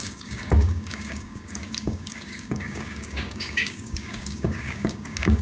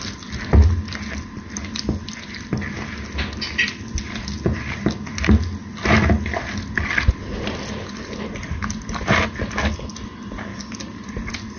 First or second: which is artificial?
first